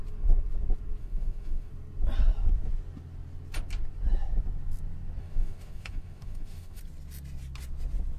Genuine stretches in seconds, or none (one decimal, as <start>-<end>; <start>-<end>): 0.0-1.0; 1.7-5.2; 6.8-8.2